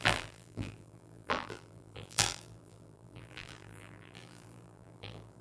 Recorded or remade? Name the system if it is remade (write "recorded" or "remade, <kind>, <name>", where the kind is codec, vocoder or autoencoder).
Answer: remade, vocoder, BigVGAN v2